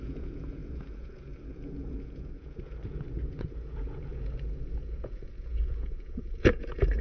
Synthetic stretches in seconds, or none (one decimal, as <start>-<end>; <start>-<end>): 0.0-7.0